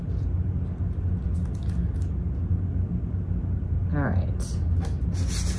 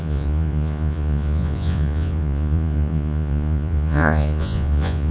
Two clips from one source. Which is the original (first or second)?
first